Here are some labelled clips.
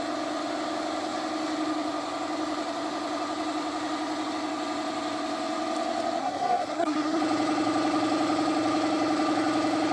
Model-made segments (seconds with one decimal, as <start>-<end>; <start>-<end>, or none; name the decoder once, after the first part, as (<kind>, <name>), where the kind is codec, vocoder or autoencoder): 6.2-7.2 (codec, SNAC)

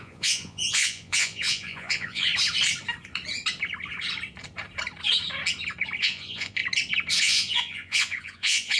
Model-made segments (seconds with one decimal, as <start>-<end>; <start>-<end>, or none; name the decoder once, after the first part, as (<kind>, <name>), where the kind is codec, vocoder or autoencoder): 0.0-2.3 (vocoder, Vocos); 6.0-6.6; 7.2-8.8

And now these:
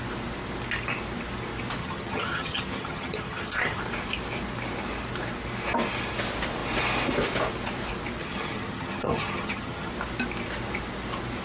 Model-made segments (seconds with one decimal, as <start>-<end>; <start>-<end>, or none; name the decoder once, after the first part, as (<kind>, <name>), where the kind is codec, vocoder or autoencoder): 1.8-3.8 (vocoder, HiFi-GAN); 8.2-9.9

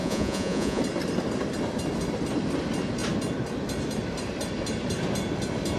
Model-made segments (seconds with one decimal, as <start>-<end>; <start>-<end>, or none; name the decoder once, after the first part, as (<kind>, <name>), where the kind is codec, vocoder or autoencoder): 0.0-0.8 (vocoder, Vocos)

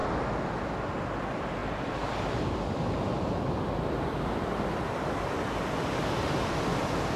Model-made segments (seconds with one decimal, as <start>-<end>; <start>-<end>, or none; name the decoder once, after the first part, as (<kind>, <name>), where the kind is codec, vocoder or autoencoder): none

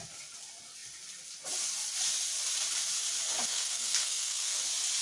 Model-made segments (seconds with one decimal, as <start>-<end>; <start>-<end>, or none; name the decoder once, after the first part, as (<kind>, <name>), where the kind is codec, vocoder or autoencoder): 3.5-4.6 (codec, SNAC)

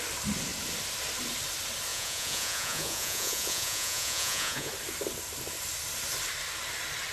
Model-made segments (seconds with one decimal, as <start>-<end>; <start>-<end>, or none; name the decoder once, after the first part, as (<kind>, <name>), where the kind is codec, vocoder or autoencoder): 1.9-4.7 (vocoder, Vocos)